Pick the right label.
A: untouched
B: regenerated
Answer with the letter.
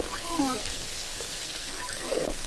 B